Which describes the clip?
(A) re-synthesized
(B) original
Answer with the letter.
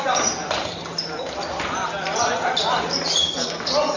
B